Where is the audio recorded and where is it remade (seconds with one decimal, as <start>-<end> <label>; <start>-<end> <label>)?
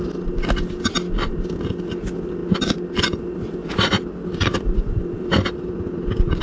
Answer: 0.0-2.4 recorded; 2.4-5.9 remade; 5.9-6.4 recorded